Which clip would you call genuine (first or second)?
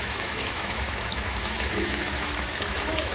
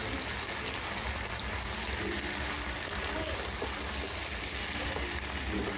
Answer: second